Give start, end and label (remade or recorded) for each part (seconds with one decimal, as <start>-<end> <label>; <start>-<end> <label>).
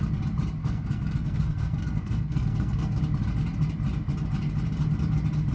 0.0-0.6 recorded; 0.6-3.0 remade; 3.0-5.5 recorded